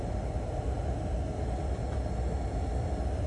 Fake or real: real